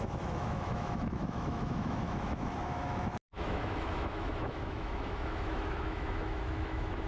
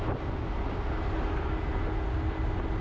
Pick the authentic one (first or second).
second